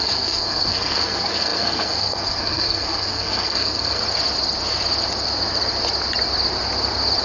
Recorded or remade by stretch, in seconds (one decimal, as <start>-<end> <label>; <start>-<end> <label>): 0.0-4.0 remade; 4.0-7.2 recorded